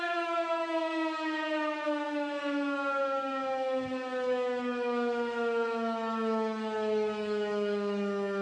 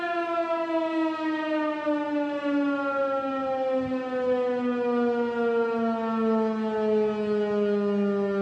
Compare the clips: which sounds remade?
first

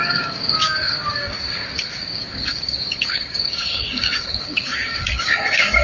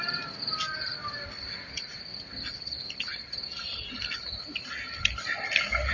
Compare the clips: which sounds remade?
first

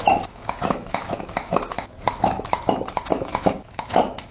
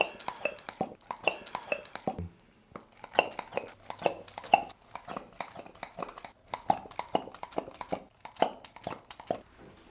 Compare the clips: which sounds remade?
first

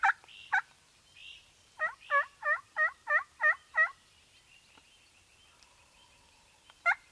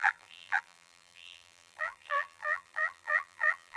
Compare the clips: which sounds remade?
second